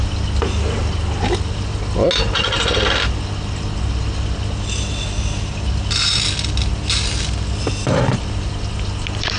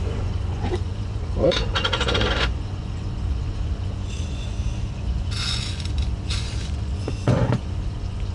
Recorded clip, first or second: first